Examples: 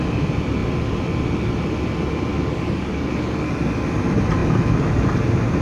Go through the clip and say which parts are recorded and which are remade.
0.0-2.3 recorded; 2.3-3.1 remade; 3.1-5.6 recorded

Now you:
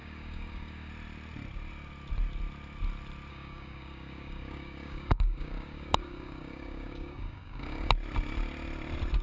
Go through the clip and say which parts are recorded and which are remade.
0.0-0.9 remade; 0.9-3.3 recorded; 3.3-7.9 remade; 7.9-9.2 recorded

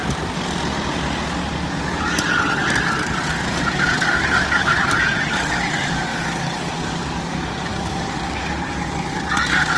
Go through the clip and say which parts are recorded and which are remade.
0.0-6.1 recorded; 6.1-6.7 remade; 6.7-7.7 recorded; 7.7-8.4 remade; 8.4-9.8 recorded

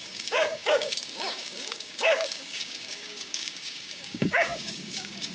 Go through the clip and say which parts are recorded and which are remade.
0.0-5.3 remade

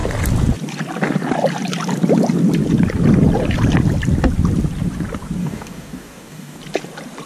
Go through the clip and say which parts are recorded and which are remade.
0.0-5.4 recorded; 5.4-6.6 remade; 6.6-7.3 recorded

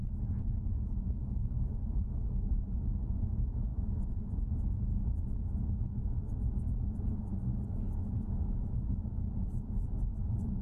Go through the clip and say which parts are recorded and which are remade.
0.0-1.2 recorded; 1.2-2.8 remade; 2.8-7.5 recorded; 7.5-8.1 remade; 8.1-10.6 recorded